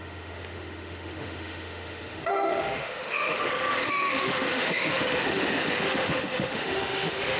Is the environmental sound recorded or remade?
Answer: remade